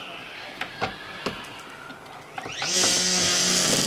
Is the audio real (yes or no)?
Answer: yes